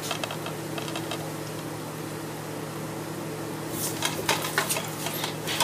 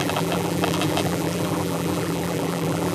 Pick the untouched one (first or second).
first